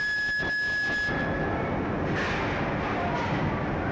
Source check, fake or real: real